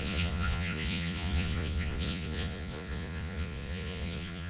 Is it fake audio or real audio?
fake